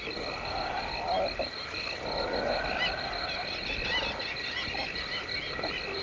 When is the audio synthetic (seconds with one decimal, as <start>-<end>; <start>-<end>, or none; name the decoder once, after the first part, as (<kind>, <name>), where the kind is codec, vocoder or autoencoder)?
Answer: none